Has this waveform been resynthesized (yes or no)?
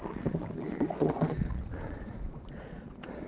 yes